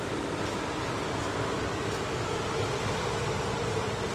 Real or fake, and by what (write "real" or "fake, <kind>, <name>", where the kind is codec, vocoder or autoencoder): real